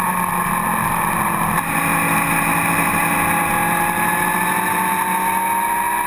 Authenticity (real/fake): real